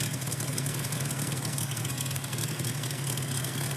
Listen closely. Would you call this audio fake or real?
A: fake